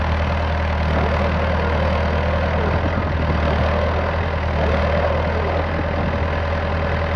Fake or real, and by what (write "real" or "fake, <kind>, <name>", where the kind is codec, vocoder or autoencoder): real